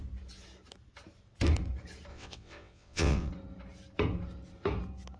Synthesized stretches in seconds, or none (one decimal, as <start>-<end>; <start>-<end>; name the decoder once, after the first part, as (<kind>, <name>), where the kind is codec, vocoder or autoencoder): 2.1-3.3 (vocoder, WaveNeXt)